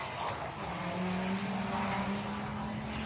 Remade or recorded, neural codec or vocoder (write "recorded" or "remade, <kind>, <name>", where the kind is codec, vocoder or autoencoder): recorded